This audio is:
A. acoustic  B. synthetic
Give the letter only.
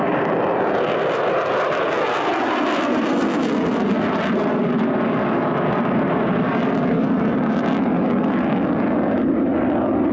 A